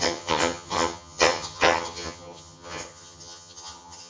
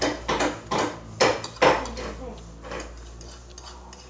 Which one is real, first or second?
second